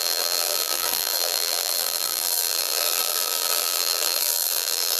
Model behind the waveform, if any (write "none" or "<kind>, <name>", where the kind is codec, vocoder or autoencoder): vocoder, BigVGAN v2